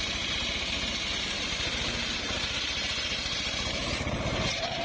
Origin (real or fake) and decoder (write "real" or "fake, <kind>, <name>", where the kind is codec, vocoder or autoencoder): fake, vocoder, BigVGAN v2